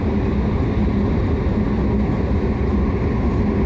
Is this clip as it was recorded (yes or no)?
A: yes